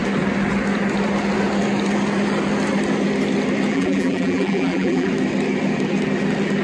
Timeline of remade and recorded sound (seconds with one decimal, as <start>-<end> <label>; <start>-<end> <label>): 0.0-3.7 recorded; 3.7-5.1 remade; 5.1-6.6 recorded